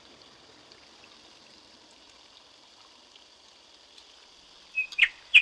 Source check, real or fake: fake